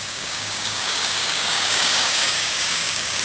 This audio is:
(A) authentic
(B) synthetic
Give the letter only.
B